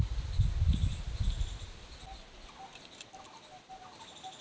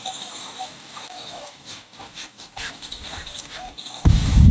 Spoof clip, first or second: second